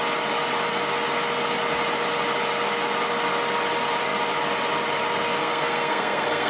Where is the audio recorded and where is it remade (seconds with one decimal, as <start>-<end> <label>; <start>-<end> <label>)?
0.0-5.4 recorded; 5.4-6.5 remade